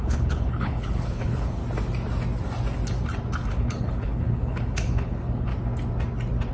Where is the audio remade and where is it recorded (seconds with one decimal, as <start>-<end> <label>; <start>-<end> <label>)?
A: 0.0-1.6 remade; 1.6-3.5 recorded; 3.5-5.5 remade; 5.5-6.5 recorded